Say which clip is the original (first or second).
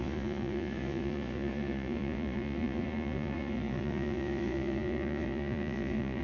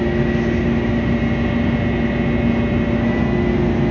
second